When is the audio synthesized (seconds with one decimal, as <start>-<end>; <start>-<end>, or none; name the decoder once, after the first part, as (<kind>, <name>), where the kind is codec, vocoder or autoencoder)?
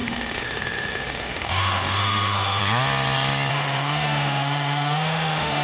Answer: 0.0-2.6 (autoencoder, DAC-VAE); 3.5-5.6